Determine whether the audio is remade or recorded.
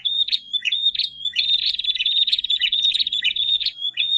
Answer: remade